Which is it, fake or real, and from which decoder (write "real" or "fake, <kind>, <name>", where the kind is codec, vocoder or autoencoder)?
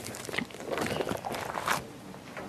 real